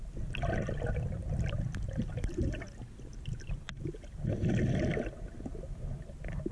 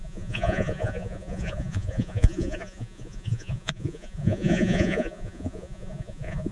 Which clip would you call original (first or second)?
first